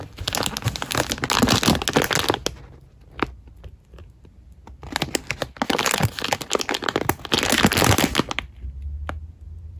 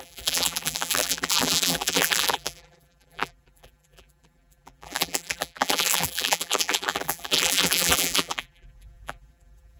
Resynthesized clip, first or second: second